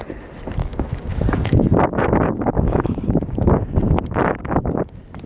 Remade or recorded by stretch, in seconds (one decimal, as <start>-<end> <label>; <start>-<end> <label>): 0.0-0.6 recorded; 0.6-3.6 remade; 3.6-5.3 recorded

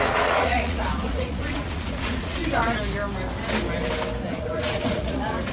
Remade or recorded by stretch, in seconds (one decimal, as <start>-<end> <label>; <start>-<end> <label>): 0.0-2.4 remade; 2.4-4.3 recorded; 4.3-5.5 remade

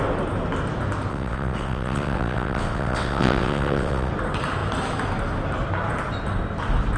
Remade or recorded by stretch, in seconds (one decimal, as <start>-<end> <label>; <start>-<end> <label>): 0.0-1.1 recorded; 1.1-4.1 remade; 4.1-7.0 recorded

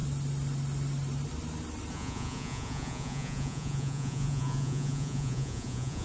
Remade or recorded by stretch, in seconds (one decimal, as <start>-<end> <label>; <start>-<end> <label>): 0.0-1.9 recorded; 1.9-6.0 remade

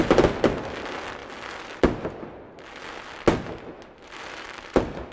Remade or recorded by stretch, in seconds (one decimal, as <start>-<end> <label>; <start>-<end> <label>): 0.0-5.1 recorded

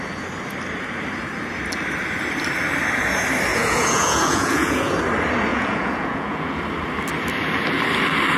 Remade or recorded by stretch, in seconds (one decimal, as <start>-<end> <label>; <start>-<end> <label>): 0.0-3.5 recorded; 3.5-4.9 remade; 4.9-5.5 recorded; 5.5-6.6 remade; 6.6-8.4 recorded

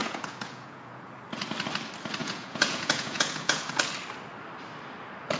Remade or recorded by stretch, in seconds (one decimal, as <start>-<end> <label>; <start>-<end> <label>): 0.0-1.1 remade; 1.1-2.2 recorded; 2.2-3.8 remade; 3.8-5.4 recorded

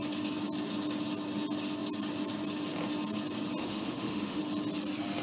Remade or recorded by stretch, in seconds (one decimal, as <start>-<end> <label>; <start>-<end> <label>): 0.0-3.6 recorded; 3.6-4.4 remade; 4.4-5.2 recorded